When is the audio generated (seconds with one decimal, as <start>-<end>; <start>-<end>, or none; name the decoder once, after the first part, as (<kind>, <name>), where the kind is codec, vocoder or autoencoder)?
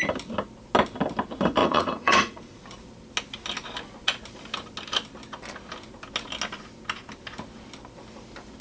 1.6-2.6 (vocoder, Vocos)